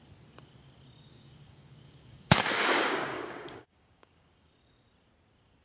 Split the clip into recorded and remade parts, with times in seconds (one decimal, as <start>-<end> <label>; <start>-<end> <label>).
0.0-1.1 recorded; 1.1-4.5 remade; 4.5-5.6 recorded